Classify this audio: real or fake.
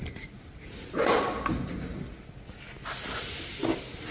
real